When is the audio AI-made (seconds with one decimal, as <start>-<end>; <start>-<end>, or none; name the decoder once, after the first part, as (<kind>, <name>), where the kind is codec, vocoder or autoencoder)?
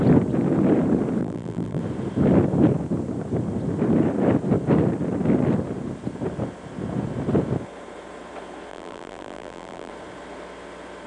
1.2-1.8 (vocoder, BigVGAN v2); 8.7-9.9